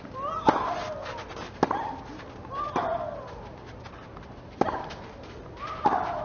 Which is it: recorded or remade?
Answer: recorded